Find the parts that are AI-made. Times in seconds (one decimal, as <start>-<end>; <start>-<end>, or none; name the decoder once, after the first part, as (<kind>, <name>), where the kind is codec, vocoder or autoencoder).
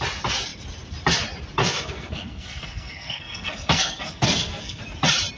1.6-4.8 (codec, SNAC)